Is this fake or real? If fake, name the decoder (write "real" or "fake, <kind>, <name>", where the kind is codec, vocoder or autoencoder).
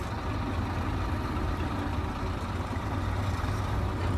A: real